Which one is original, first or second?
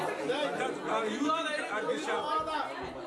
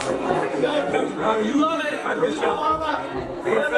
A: first